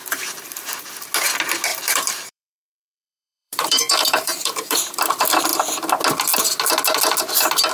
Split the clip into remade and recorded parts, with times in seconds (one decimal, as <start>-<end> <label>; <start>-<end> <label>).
0.0-0.9 remade; 0.9-1.7 recorded; 1.7-4.8 remade; 4.8-7.7 recorded